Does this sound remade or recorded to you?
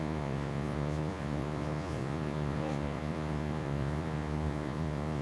remade